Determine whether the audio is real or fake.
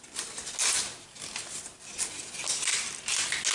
real